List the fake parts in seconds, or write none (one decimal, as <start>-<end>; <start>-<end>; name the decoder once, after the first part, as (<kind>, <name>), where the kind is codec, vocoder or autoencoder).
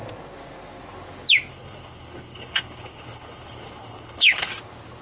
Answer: 1.5-4.5 (codec, HILCodec)